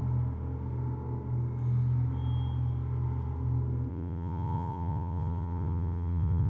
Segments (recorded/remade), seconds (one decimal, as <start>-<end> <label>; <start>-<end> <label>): 0.0-3.9 recorded; 3.9-6.5 remade